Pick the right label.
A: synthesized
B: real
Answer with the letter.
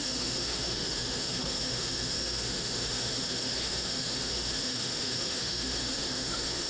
A